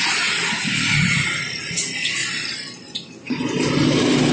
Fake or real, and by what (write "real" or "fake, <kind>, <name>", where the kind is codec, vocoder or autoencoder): real